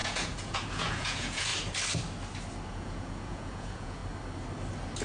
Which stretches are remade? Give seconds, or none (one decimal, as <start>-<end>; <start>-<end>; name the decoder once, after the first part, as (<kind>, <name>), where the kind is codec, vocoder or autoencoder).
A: 0.0-1.5 (vocoder, Vocos); 2.7-4.0